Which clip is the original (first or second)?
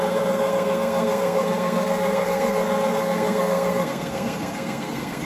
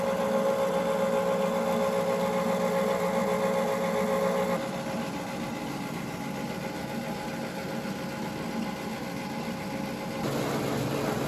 second